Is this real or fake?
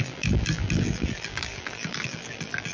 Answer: fake